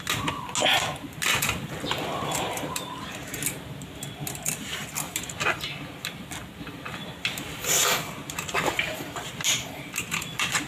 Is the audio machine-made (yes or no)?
no